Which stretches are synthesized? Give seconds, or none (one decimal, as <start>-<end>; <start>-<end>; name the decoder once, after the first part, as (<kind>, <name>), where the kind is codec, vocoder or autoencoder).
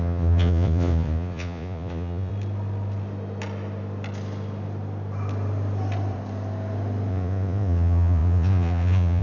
0.0-2.3 (vocoder, Vocos); 7.1-9.2